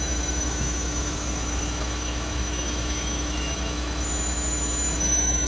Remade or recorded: remade